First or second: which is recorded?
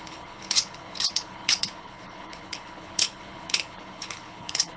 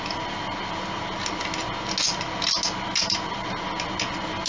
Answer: second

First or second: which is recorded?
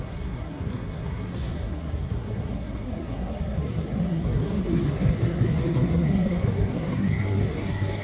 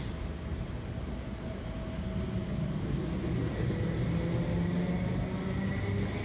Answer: second